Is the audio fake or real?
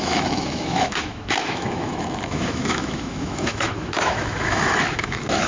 fake